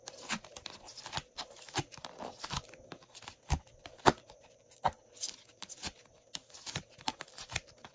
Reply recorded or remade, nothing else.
recorded